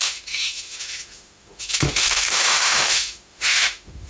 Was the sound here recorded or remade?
remade